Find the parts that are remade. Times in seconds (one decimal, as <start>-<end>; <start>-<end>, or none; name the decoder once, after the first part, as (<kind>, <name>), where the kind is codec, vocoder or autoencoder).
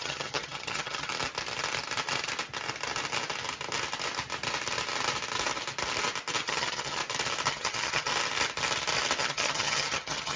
0.0-1.1 (vocoder, HiFi-GAN); 6.4-7.0; 7.5-8.1; 9.2-10.4